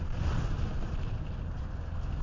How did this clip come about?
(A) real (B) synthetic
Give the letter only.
A